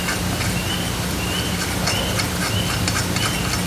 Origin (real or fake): real